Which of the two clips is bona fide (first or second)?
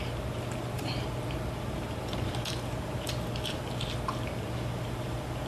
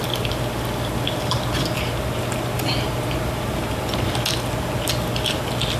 second